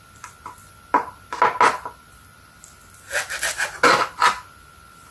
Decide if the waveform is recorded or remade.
recorded